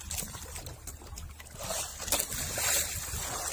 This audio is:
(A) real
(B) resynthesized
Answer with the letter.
A